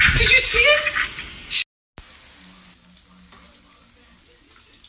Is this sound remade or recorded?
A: recorded